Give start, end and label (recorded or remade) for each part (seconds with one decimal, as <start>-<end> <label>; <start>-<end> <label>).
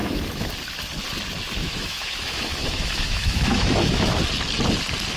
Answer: 0.0-0.5 remade; 0.5-1.6 recorded; 1.6-4.2 remade; 4.2-5.2 recorded